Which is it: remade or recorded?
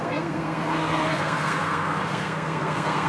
remade